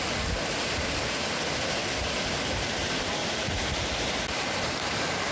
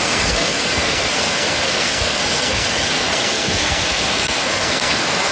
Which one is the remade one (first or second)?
second